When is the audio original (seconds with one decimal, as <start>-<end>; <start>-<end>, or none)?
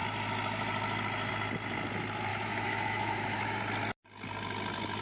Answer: 0.0-2.3; 3.6-5.0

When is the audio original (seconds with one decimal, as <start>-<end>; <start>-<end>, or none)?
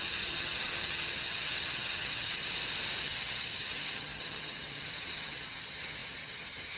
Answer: 2.4-3.0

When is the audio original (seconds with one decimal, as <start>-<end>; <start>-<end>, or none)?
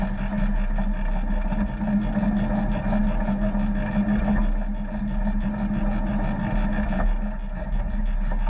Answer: 0.0-8.5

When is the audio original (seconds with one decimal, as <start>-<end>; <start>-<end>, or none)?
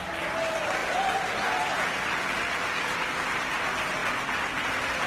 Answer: 0.0-5.1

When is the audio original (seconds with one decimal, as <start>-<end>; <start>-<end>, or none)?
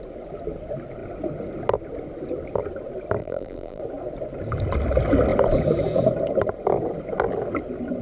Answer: 0.0-3.2; 3.8-8.0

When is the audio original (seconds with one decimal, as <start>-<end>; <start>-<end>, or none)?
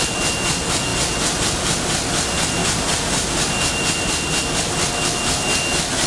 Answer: 0.0-0.9; 1.4-2.6; 4.4-6.1